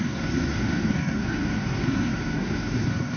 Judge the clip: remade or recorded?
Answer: remade